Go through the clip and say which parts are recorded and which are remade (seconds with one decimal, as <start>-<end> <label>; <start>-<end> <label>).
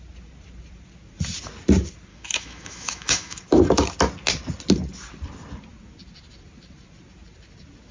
0.0-2.1 recorded; 2.1-3.4 remade; 3.4-7.9 recorded